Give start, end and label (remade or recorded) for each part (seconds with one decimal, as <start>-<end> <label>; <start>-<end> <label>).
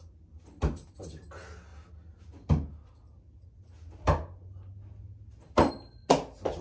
0.0-6.6 recorded